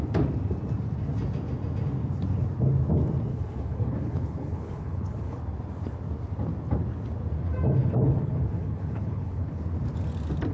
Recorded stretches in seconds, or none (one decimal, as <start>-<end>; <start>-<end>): 0.0-3.3; 5.4-7.8; 9.6-10.5